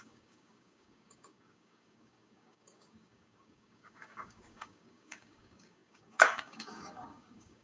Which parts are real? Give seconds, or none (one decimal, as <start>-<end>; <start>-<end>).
none